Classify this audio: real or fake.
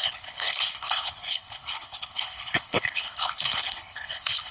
fake